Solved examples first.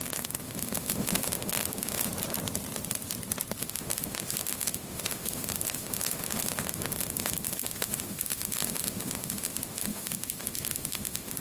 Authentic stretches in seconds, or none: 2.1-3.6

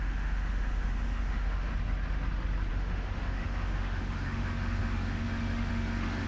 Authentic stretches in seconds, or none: 1.7-2.7